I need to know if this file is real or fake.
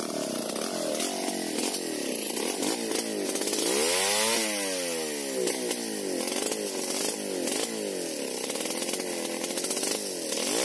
real